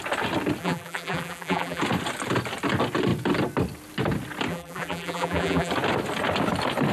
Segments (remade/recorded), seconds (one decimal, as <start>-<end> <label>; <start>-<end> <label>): 0.0-0.6 recorded; 0.6-1.8 remade; 1.8-4.5 recorded; 4.5-5.7 remade; 5.7-6.9 recorded